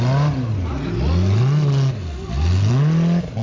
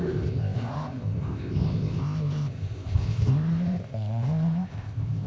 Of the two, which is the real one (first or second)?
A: first